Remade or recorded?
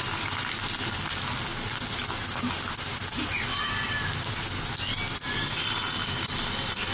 recorded